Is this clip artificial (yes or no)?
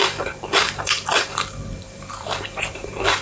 yes